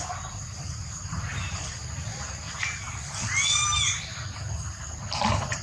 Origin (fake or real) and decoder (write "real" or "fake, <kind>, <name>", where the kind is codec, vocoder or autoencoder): real